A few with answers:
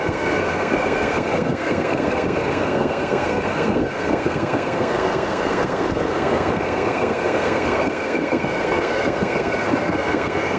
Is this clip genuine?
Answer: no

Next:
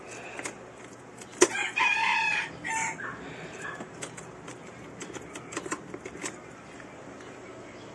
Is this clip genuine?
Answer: yes